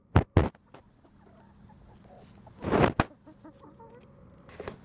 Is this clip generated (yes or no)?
no